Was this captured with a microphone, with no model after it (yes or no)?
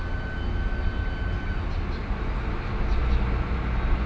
yes